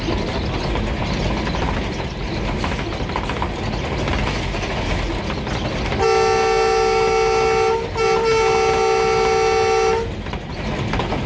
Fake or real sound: real